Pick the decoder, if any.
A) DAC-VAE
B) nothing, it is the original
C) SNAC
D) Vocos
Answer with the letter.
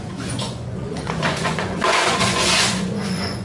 D